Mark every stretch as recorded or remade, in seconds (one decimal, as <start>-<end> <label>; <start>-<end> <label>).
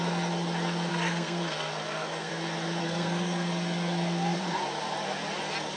0.0-0.9 recorded; 0.9-2.3 remade; 2.3-2.8 recorded; 2.8-4.4 remade; 4.4-5.8 recorded